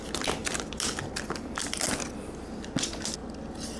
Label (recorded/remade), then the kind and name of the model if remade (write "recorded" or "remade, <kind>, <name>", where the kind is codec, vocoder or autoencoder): recorded